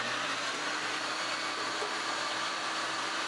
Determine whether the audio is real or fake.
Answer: real